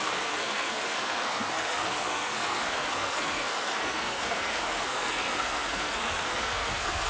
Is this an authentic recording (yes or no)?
no